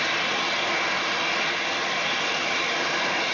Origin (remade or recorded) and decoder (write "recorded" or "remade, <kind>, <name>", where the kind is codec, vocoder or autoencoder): recorded